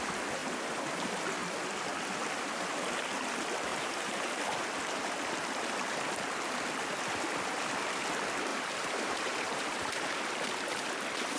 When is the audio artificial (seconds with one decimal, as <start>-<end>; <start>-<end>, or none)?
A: 0.4-1.0; 3.7-4.4; 8.5-10.2